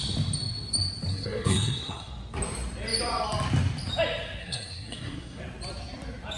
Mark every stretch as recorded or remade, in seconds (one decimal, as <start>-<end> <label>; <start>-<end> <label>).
0.0-1.1 recorded; 1.1-2.1 remade; 2.1-4.4 recorded; 4.4-5.4 remade; 5.4-6.4 recorded